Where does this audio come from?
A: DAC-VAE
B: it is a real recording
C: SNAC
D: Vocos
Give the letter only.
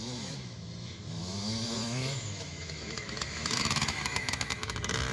A